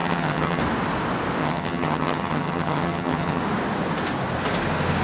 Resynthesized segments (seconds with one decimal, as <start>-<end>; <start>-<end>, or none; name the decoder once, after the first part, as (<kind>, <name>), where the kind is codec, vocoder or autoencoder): 0.0-0.6 (vocoder, HiFi-GAN); 1.4-3.4